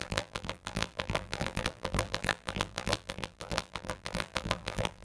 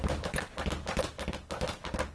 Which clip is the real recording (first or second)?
second